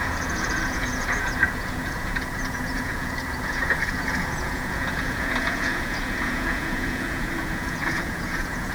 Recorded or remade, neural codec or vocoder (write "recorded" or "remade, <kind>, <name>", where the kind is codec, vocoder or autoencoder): remade, vocoder, Vocos